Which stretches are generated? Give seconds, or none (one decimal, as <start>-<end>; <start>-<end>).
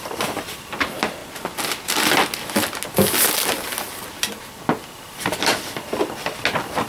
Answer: none